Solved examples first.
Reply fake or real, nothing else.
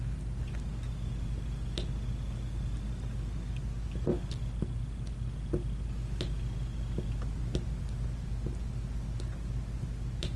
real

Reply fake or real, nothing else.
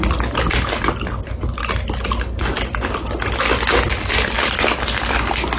real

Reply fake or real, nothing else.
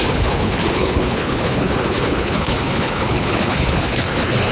fake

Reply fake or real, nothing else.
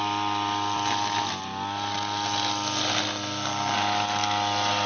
real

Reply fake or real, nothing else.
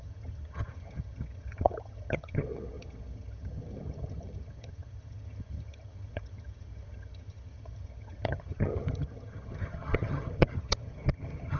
fake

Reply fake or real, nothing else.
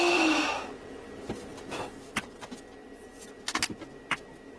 real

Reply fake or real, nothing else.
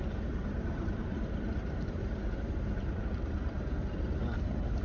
fake